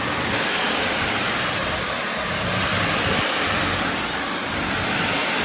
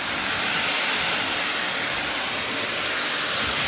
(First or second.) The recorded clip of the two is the second